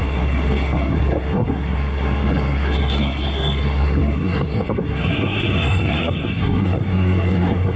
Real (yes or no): no